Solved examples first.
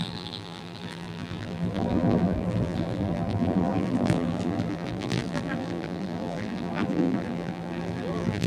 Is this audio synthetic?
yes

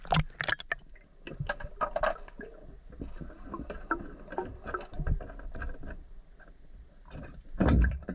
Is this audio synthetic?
no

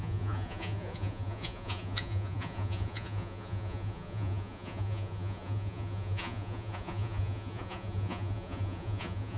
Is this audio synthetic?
yes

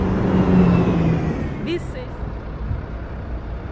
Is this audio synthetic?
no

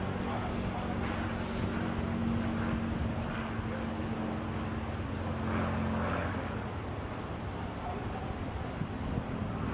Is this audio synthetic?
no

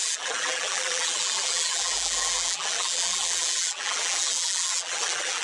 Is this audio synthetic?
yes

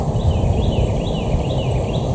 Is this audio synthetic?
no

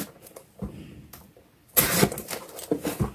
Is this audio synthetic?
no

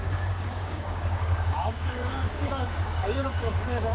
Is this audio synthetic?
yes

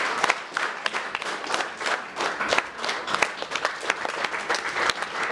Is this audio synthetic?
no